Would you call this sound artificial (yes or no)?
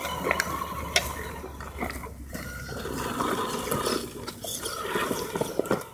no